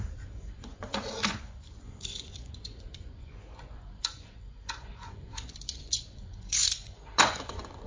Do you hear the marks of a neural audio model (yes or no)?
yes